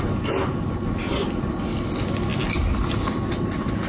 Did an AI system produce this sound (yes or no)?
no